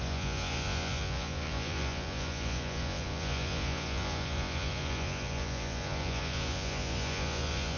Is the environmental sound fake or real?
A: fake